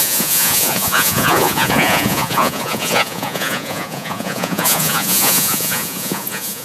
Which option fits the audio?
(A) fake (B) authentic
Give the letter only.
A